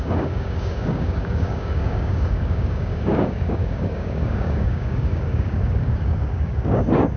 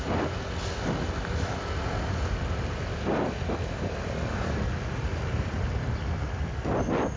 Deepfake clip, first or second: first